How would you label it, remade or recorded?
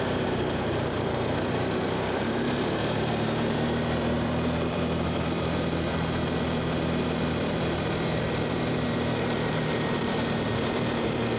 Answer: remade